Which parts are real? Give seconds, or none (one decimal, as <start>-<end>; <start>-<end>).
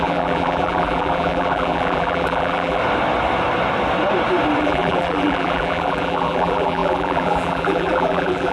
2.8-4.6